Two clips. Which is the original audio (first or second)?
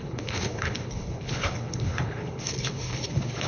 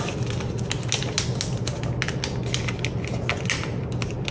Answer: second